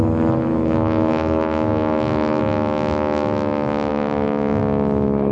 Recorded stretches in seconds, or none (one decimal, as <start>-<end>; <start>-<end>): 0.0-0.5; 2.4-3.9; 4.6-5.3